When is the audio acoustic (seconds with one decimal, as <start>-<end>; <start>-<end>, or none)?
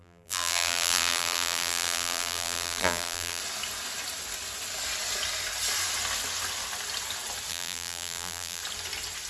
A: 3.4-7.5; 8.6-9.3